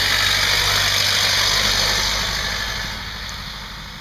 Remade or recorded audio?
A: recorded